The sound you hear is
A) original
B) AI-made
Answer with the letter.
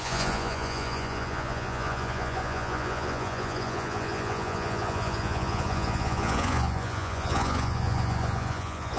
B